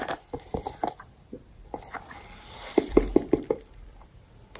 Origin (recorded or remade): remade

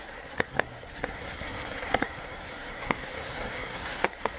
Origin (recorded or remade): remade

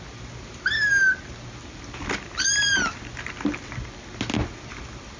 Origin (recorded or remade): recorded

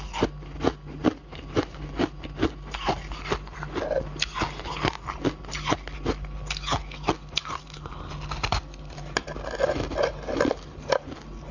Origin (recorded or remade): recorded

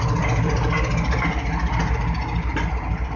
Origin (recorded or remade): recorded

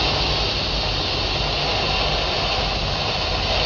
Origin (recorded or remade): recorded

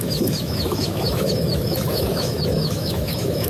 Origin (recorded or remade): remade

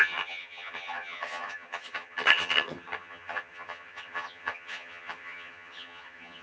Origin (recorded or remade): remade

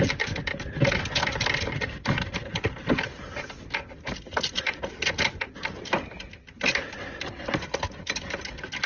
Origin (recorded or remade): recorded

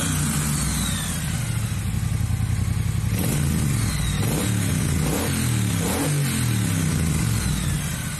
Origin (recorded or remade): recorded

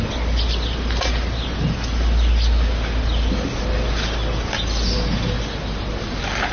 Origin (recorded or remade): recorded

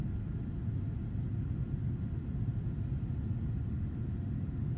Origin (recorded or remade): recorded